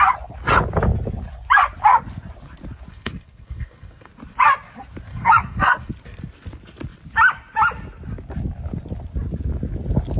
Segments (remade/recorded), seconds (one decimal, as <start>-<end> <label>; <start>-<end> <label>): 0.0-2.9 recorded; 2.9-4.1 remade; 4.1-5.1 recorded; 5.1-5.9 remade; 5.9-10.2 recorded